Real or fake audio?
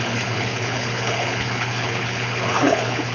fake